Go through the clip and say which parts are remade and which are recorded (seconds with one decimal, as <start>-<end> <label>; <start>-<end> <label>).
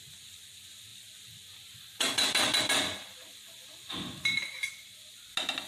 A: 0.0-5.7 recorded